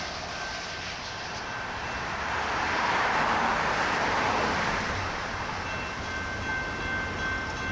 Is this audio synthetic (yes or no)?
no